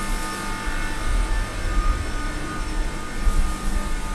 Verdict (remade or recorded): recorded